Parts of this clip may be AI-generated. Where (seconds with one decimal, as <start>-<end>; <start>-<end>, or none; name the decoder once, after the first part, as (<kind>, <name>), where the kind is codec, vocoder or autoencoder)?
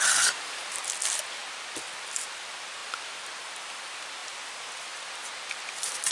4.2-5.1 (vocoder, BigVGAN v2)